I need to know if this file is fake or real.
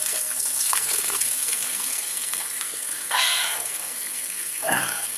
fake